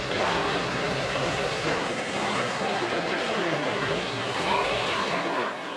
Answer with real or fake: fake